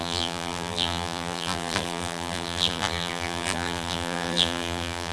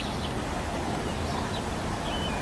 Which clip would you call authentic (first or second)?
second